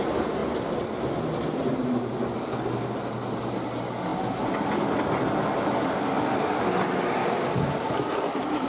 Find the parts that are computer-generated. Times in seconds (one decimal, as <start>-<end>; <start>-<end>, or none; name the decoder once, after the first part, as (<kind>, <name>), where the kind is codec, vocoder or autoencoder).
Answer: 7.2-7.9 (codec, DAC)